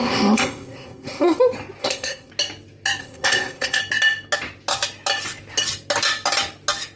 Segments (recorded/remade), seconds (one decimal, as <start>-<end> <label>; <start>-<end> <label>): 0.0-1.4 remade; 1.4-1.8 recorded; 1.8-2.3 remade; 2.3-3.0 recorded; 3.0-3.8 remade; 3.8-7.0 recorded